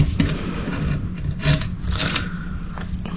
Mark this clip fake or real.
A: real